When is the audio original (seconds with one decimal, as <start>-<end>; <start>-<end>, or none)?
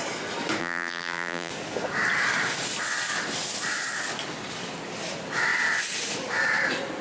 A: 0.0-0.6; 1.5-7.0